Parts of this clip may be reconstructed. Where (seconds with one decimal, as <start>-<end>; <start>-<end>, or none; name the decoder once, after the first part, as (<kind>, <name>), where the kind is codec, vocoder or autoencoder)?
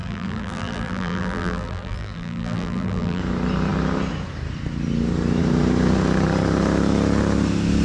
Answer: 0.0-3.2 (vocoder, BigVGAN v2)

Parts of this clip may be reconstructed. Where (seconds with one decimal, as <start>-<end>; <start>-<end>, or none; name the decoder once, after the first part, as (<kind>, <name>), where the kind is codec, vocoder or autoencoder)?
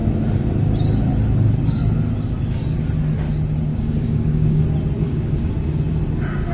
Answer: 3.7-4.6 (codec, DAC); 5.0-5.5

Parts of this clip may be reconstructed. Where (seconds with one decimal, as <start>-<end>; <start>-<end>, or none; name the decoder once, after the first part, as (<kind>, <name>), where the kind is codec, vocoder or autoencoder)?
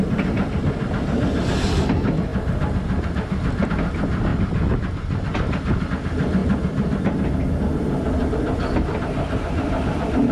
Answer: none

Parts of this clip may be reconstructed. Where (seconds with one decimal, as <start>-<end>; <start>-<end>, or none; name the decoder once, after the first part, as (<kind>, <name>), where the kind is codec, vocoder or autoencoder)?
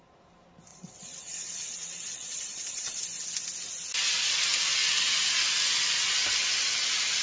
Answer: 0.7-3.0 (vocoder, WaveNeXt)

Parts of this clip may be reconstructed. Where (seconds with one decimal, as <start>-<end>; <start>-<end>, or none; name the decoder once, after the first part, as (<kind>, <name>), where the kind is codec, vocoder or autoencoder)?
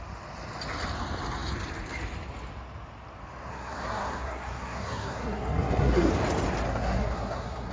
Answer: 3.5-6.1 (codec, SNAC); 6.7-7.7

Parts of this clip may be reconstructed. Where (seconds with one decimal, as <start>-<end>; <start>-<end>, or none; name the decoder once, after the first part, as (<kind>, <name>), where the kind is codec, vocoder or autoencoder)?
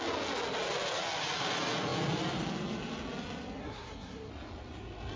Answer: 3.6-4.3 (codec, SNAC)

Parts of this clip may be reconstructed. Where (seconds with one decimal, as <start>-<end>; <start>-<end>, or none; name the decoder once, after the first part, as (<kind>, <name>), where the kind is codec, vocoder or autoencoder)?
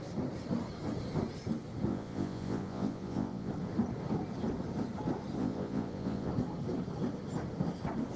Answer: 1.9-3.5 (vocoder, Vocos); 5.4-6.3